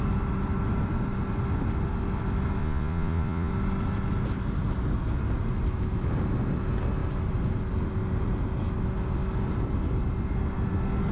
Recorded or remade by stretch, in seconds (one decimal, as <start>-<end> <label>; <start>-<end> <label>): 0.0-2.6 recorded; 2.6-3.5 remade; 3.5-11.1 recorded

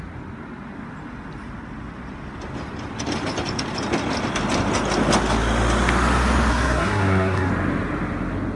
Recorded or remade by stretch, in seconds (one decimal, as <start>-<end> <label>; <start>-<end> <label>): 0.0-6.5 recorded; 6.5-7.5 remade; 7.5-8.6 recorded

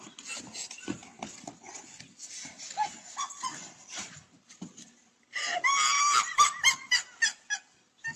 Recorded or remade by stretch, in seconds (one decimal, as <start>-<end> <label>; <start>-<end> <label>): 0.0-3.5 recorded; 3.5-7.0 remade; 7.0-8.2 recorded

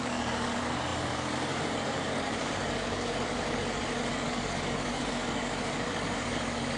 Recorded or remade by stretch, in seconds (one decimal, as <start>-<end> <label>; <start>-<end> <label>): 0.0-6.8 remade